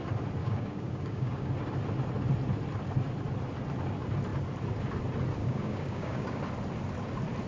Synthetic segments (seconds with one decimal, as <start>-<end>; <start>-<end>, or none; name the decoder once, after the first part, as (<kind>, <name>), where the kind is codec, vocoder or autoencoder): 0.4-1.5 (codec, DAC); 5.4-6.4